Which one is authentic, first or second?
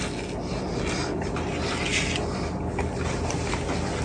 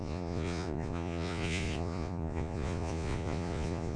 first